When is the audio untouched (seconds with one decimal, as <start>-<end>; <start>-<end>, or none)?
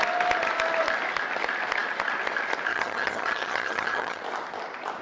0.0-2.7; 4.2-5.0